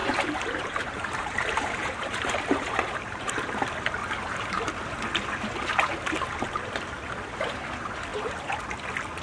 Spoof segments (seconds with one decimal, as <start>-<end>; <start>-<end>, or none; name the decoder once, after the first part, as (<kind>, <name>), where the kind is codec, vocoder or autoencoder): 0.0-3.3 (vocoder, BigVGAN v2); 4.0-4.7

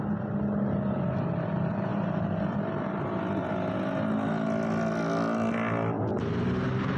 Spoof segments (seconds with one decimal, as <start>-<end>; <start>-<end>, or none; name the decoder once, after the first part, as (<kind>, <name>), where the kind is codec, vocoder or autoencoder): none

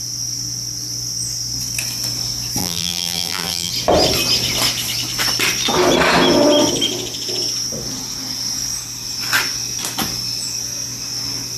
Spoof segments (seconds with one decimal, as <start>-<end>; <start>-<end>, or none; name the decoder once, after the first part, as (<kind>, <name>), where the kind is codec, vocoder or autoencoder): 2.6-3.7 (vocoder, BigVGAN v2)

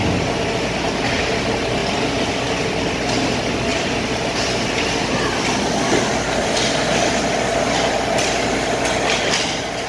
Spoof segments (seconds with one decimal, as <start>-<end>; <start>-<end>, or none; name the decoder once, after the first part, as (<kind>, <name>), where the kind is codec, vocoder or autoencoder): 3.7-4.8 (vocoder, BigVGAN v2)

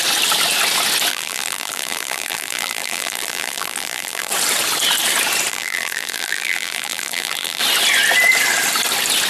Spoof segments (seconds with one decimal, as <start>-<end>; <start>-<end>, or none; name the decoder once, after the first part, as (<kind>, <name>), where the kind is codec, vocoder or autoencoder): 1.1-4.3 (vocoder, BigVGAN v2); 5.5-7.6

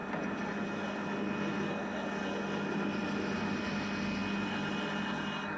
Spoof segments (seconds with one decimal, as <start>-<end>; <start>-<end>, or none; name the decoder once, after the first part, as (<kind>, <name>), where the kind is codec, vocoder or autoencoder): none